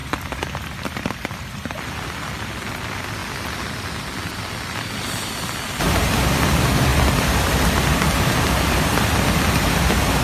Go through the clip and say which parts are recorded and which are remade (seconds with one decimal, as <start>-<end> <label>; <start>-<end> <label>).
0.0-2.7 remade; 2.7-10.2 recorded